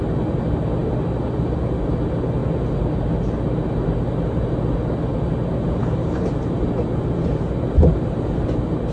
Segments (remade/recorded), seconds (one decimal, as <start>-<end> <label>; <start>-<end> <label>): 0.0-5.8 recorded; 5.8-6.3 remade; 6.3-8.9 recorded